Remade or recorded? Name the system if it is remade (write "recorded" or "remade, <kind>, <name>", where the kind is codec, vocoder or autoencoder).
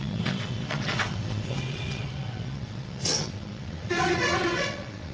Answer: remade, vocoder, WaveNeXt